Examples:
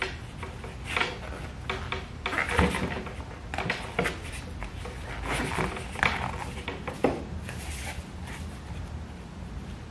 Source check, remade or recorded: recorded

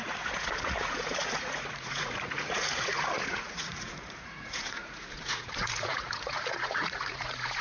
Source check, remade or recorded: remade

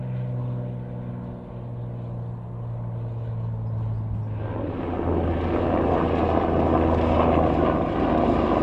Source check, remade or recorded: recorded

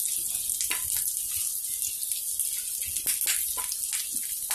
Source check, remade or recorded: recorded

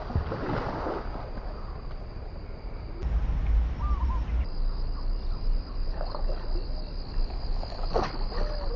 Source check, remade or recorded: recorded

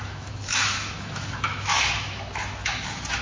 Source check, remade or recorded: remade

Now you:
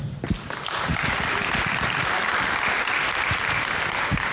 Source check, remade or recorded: recorded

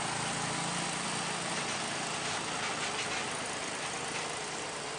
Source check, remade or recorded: recorded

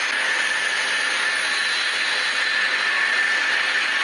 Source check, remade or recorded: recorded